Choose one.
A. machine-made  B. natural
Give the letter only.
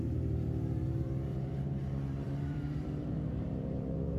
A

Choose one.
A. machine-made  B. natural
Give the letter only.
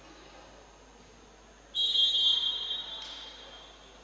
B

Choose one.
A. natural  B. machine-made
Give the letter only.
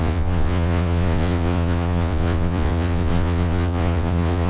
B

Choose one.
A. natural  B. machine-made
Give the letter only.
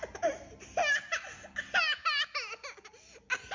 A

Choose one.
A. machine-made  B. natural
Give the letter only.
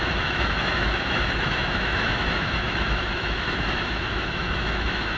A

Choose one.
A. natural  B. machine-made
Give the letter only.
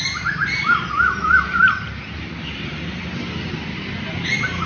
A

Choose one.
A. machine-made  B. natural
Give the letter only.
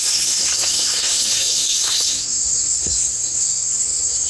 A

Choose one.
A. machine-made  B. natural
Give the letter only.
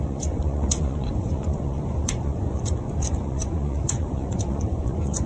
A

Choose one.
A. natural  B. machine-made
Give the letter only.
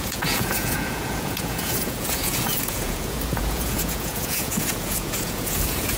B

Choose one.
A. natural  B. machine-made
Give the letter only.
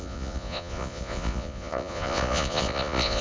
B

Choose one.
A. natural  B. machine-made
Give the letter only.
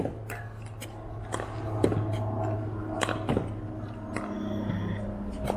A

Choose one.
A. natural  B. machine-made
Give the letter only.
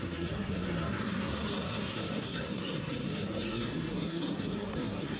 B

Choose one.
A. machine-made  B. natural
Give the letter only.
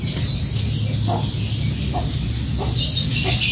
B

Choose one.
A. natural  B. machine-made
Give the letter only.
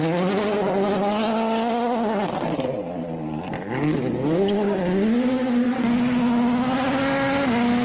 A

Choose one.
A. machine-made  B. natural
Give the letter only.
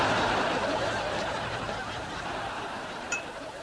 B